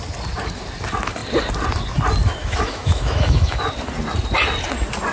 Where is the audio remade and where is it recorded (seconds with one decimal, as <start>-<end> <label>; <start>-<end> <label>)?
0.0-2.4 recorded; 2.4-3.7 remade; 3.7-5.1 recorded